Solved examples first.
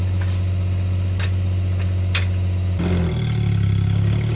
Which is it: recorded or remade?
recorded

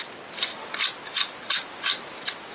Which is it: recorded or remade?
recorded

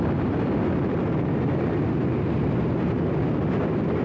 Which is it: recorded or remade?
recorded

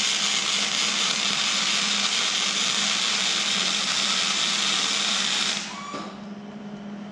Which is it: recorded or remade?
recorded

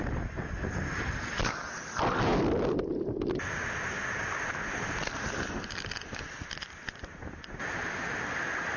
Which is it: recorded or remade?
recorded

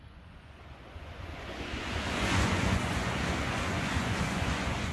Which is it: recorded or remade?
remade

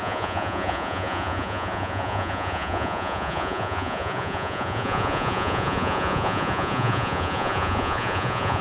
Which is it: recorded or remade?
remade